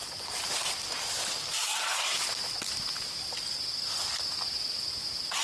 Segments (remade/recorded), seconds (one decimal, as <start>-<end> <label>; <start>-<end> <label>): 0.0-5.4 recorded

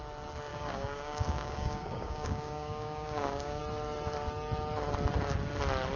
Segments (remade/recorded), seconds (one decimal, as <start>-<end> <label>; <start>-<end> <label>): 0.0-0.5 recorded; 0.5-3.6 remade; 3.6-6.0 recorded

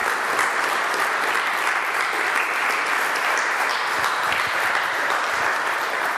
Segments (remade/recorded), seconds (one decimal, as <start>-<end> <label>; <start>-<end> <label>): 0.0-3.7 remade; 3.7-6.2 recorded